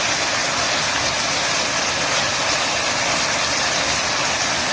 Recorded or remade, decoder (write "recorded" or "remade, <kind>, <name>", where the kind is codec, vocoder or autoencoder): recorded